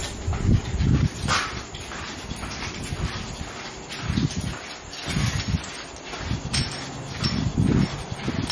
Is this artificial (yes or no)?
no